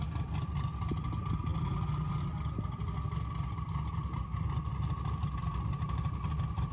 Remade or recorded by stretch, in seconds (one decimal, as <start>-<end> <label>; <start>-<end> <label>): 0.0-6.7 recorded